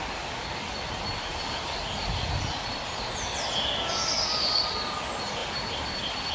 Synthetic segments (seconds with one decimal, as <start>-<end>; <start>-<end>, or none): 1.3-2.2; 5.4-6.3